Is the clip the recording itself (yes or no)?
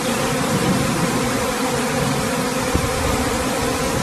no